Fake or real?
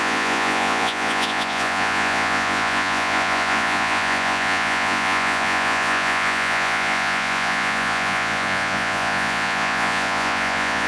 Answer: fake